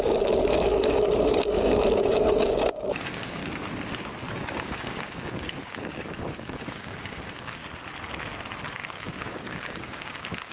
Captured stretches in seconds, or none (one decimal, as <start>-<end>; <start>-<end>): 3.4-4.3; 7.6-8.8